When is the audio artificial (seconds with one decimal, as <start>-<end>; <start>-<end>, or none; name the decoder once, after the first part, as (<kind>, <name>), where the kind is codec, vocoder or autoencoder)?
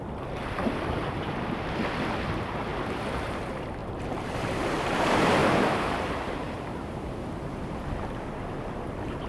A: 2.7-3.4 (vocoder, BigVGAN v2); 3.8-5.0; 5.4-8.2